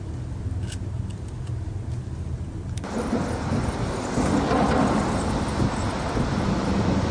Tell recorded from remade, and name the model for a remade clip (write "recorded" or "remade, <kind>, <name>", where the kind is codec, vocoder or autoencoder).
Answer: recorded